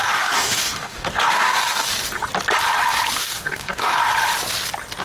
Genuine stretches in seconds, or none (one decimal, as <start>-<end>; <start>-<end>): 1.9-3.2; 4.0-5.0